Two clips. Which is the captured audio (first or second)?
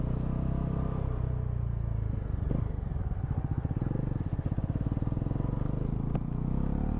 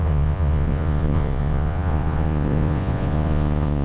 first